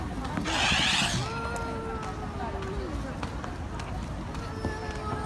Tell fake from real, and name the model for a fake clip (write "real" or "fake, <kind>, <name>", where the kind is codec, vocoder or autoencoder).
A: real